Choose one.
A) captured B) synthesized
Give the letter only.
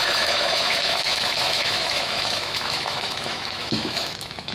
B